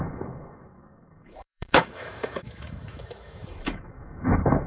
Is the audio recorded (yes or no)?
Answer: no